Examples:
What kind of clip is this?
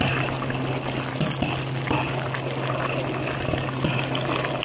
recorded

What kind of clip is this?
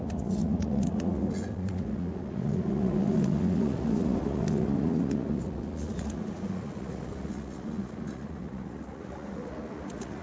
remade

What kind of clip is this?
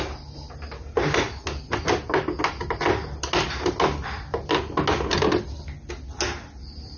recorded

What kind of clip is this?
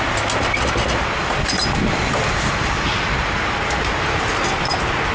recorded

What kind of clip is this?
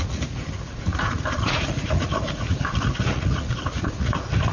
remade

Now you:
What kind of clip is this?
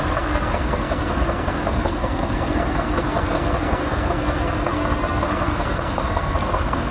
remade